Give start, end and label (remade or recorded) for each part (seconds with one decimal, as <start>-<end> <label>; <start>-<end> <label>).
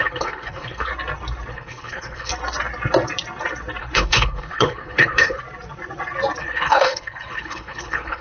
0.0-0.9 remade; 0.9-1.5 recorded; 1.5-2.3 remade; 2.3-3.8 recorded; 3.8-5.4 remade; 5.4-6.4 recorded; 6.4-8.2 remade